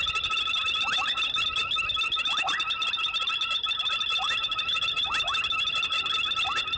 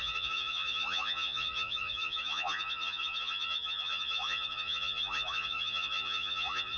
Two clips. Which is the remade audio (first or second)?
second